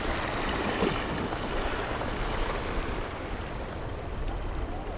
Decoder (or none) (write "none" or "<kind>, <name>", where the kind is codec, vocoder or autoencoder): none